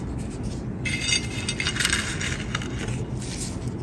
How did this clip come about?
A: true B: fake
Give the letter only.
A